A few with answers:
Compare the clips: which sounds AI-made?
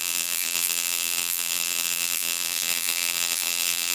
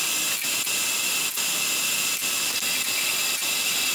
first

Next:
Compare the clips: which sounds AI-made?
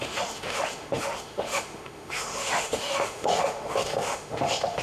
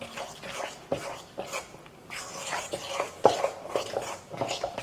first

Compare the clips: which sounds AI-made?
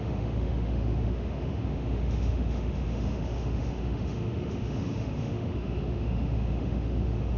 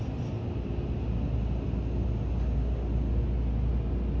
first